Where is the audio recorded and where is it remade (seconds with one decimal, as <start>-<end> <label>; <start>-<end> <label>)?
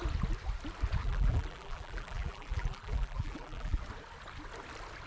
0.0-1.0 recorded; 1.0-3.8 remade; 3.8-5.1 recorded